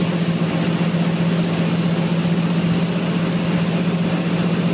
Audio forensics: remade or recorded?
recorded